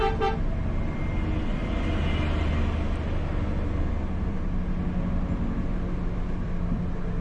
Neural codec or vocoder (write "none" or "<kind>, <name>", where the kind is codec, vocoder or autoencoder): none